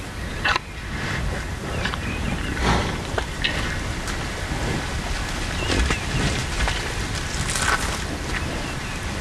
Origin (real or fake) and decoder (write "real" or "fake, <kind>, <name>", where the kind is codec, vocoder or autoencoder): real